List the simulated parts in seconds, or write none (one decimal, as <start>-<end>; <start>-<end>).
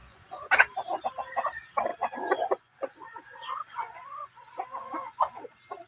0.0-0.5; 1.9-5.4